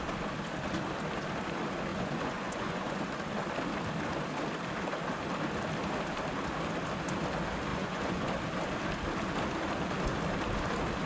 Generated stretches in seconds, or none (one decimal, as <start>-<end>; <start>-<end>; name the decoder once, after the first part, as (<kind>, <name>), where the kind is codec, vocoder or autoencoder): 1.9-3.0 (vocoder, Vocos); 7.7-8.3